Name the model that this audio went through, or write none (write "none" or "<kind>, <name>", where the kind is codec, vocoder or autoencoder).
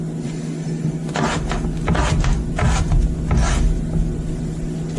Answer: none